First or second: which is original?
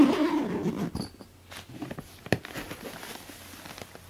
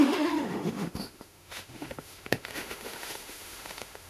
first